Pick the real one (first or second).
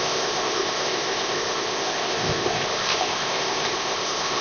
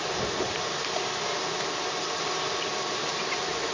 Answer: second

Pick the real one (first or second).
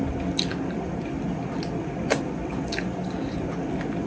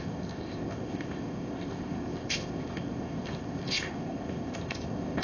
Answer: first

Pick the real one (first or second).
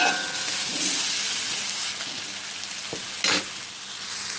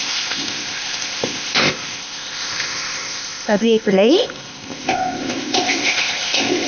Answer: first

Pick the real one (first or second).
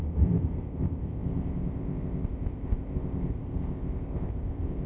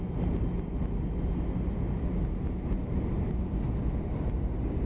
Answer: second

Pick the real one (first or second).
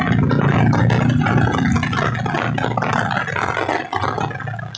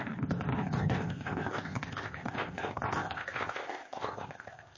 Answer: first